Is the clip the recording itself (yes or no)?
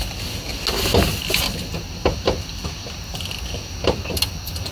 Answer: yes